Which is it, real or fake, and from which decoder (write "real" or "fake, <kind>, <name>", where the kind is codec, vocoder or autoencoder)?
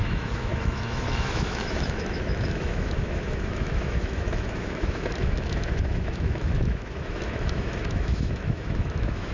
fake, autoencoder, DAC-VAE